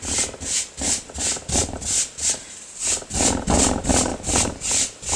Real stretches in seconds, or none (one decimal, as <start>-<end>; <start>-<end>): 0.0-5.2